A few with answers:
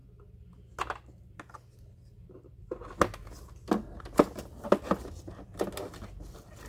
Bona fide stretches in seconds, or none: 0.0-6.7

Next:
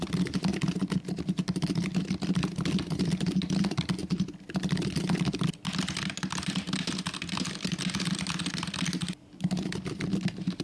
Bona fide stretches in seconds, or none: 0.0-10.6

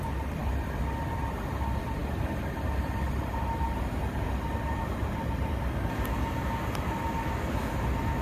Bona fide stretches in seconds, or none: 0.0-8.2

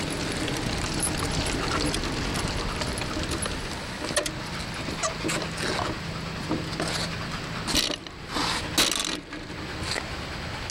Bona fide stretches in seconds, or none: 0.0-10.7

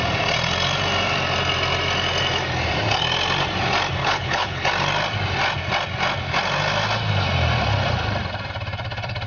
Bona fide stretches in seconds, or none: 0.0-4.0; 4.7-9.3

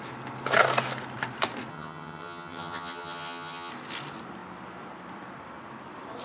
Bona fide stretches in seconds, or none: 0.0-1.7; 3.7-6.2